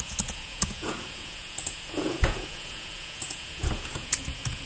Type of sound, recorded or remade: remade